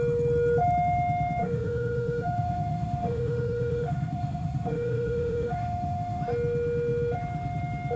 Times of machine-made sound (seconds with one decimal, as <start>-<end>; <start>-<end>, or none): 1.4-6.2